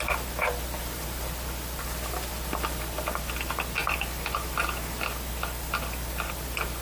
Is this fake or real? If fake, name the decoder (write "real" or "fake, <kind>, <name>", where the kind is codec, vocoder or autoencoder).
real